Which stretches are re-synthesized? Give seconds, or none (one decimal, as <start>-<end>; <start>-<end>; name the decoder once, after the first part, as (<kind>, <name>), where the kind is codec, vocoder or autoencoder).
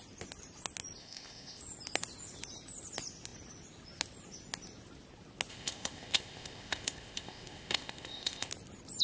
1.0-1.6 (codec, ZipCodec); 5.5-8.5